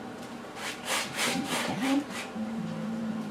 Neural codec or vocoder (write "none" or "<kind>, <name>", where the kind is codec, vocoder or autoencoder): vocoder, BigVGAN v2